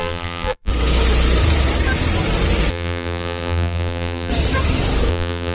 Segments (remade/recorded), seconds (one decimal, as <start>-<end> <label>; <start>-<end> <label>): 0.0-0.7 remade; 0.7-2.7 recorded; 2.7-4.3 remade; 4.3-5.1 recorded; 5.1-5.5 remade